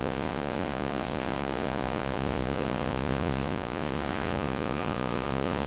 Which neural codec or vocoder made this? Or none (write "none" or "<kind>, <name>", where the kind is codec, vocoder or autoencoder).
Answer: vocoder, Vocos